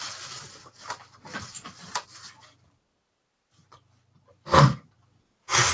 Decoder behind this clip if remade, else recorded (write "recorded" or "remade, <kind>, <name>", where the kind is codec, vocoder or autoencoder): recorded